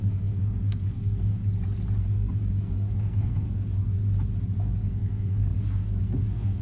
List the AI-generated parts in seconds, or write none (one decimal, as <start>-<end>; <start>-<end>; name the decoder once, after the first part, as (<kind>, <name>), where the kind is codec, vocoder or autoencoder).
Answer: 0.0-1.4 (codec, SNAC); 2.0-4.0; 4.6-6.6